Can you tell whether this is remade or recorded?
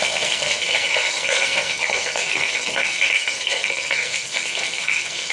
remade